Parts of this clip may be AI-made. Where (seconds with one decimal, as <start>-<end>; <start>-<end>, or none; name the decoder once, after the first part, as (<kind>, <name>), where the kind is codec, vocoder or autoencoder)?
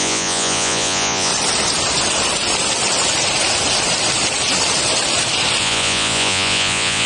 0.0-1.3 (vocoder, Vocos); 5.6-7.1